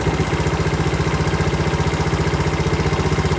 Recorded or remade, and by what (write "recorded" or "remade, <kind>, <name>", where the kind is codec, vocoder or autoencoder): recorded